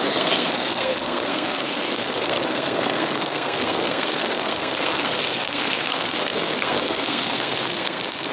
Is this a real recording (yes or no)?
no